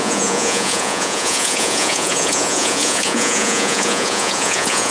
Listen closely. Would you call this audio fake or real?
fake